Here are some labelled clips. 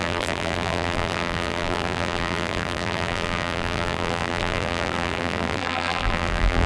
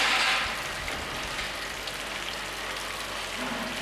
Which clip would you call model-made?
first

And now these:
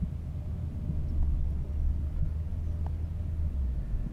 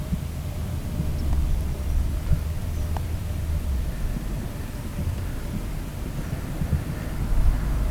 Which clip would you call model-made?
second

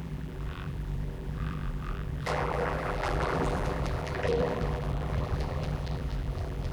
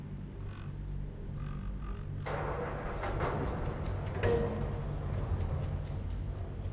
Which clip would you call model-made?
first